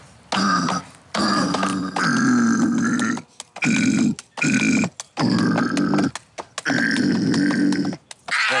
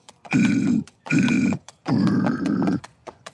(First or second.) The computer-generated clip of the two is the second